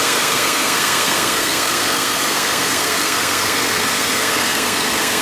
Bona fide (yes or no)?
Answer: no